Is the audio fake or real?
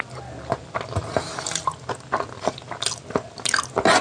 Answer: real